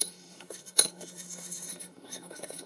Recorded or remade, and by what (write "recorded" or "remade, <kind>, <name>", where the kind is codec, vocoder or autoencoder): remade, autoencoder, DAC-VAE